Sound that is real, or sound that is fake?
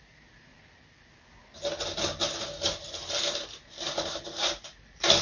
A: real